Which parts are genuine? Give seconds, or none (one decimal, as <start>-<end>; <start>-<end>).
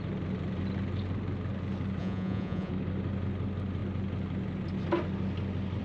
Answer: 0.0-2.0; 2.7-5.8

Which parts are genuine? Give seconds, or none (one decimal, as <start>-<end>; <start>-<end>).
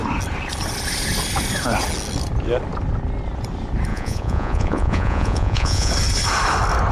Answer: 0.0-3.9; 5.9-6.9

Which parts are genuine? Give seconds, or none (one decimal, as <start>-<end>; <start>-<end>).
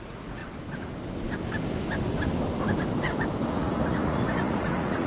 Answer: 0.4-3.5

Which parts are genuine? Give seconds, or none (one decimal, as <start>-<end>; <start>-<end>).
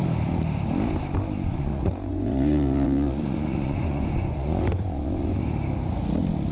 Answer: 0.0-1.5; 5.4-6.5